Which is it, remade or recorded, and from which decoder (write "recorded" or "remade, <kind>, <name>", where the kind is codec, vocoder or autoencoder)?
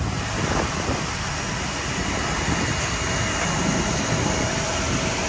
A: recorded